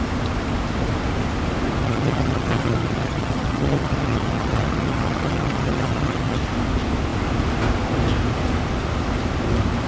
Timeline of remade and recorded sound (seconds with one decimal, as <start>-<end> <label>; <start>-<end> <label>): 0.0-1.8 recorded; 1.8-6.4 remade; 6.4-9.9 recorded

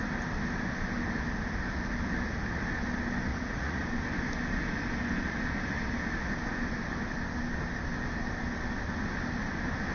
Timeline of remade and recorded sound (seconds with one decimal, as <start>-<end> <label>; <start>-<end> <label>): 0.0-3.3 recorded; 3.3-3.8 remade; 3.8-9.9 recorded

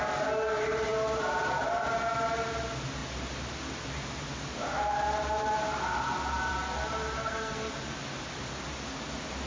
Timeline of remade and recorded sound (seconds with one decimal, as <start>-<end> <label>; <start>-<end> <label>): 0.0-7.2 recorded; 7.2-7.7 remade; 7.7-9.5 recorded

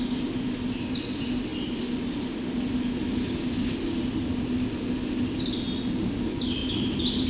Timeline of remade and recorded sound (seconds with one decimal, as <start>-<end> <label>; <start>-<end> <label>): 0.0-6.6 recorded; 6.6-7.3 remade

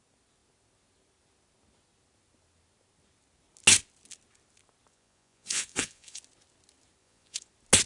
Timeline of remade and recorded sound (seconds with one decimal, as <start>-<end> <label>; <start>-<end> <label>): 0.0-4.9 recorded; 4.9-6.2 remade; 6.2-7.0 recorded; 7.0-7.5 remade; 7.5-7.9 recorded

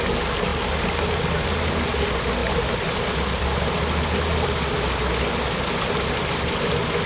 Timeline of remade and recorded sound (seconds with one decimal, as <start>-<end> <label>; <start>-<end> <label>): 0.0-2.4 recorded; 2.4-3.7 remade; 3.7-7.1 recorded

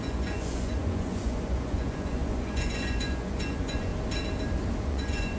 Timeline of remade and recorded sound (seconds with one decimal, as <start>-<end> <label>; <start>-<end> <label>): 0.0-3.9 remade; 3.9-4.8 recorded; 4.8-5.4 remade

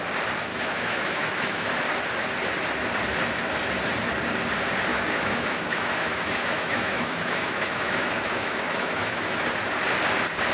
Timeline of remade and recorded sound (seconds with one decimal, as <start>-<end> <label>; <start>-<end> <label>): 0.0-0.5 recorded; 0.5-1.7 remade; 1.7-4.9 recorded; 4.9-9.4 remade; 9.4-10.5 recorded